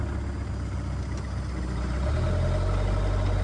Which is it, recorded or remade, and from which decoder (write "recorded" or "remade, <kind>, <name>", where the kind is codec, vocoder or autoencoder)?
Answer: recorded